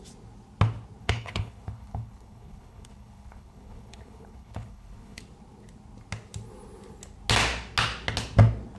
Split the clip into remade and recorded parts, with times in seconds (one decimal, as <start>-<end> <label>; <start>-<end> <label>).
0.0-1.0 recorded; 1.0-5.2 remade; 5.2-8.8 recorded